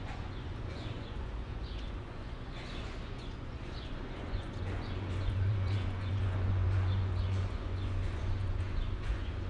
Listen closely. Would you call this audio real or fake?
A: fake